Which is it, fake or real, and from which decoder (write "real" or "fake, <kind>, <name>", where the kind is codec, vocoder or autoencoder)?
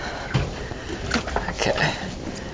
fake, vocoder, BigVGAN v2